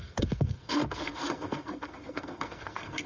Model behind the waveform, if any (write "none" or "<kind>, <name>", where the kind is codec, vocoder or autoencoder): codec, SNAC